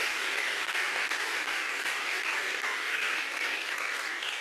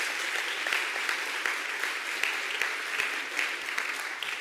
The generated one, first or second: first